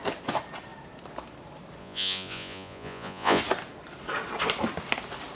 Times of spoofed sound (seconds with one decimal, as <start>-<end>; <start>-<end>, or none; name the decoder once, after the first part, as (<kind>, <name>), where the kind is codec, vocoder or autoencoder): 1.8-3.4 (vocoder, Vocos)